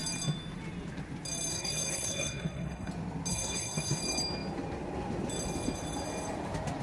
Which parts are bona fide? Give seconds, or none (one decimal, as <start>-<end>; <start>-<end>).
0.0-1.5; 2.9-3.3; 4.0-6.8